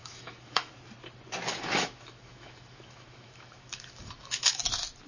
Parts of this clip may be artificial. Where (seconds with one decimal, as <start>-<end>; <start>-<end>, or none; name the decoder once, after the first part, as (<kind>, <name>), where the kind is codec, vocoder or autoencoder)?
0.0-0.7 (autoencoder, DAC-VAE); 1.5-4.6